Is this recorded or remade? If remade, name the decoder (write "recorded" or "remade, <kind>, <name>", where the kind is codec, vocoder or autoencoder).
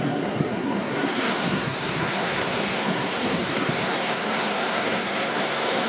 remade, codec, SNAC